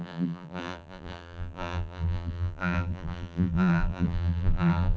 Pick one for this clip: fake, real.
fake